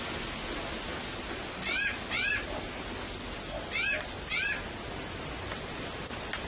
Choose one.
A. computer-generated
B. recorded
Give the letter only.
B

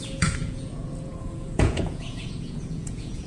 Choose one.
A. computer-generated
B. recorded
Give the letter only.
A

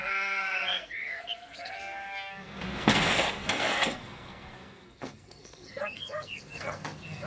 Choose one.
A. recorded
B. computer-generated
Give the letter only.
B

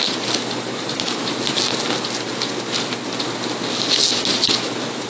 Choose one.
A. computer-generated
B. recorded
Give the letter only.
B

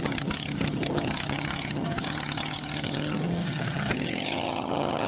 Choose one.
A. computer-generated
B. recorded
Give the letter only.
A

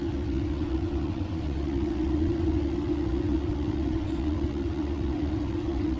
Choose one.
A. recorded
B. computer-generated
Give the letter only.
B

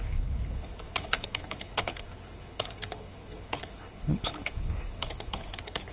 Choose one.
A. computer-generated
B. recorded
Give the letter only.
A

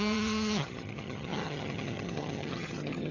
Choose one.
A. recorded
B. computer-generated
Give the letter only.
B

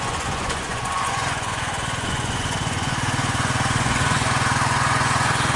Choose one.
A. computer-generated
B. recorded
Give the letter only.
A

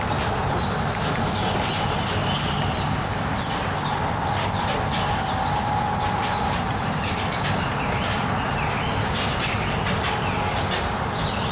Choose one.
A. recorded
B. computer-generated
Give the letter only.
A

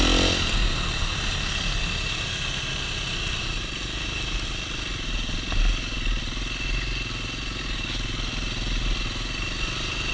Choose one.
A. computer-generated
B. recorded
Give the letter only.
B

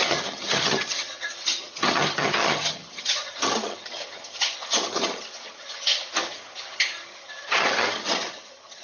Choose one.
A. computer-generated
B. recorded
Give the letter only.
A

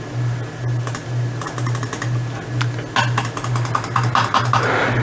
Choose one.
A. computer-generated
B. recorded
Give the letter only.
B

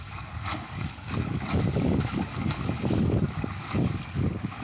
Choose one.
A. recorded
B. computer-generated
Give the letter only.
B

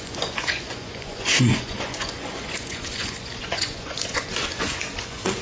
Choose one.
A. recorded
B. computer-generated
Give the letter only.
B